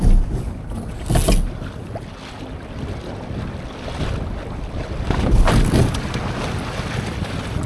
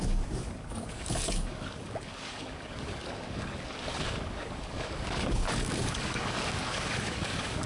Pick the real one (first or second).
first